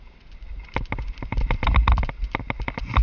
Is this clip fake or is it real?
real